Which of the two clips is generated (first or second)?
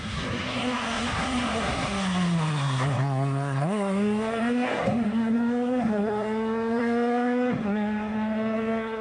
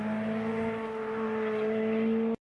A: first